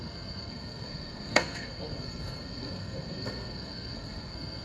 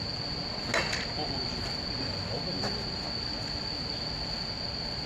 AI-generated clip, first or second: first